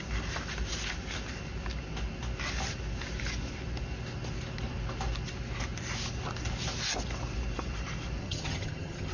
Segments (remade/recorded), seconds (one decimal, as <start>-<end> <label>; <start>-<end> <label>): 0.0-8.2 recorded; 8.2-9.1 remade